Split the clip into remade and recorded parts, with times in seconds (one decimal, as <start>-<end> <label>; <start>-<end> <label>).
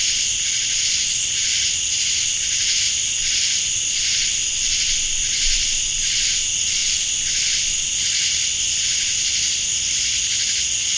0.0-11.0 recorded